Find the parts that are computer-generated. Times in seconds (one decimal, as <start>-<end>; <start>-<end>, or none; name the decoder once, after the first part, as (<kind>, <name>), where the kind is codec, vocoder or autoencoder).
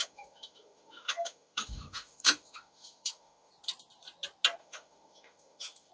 0.0-3.5 (autoencoder, DAC-VAE); 4.6-5.9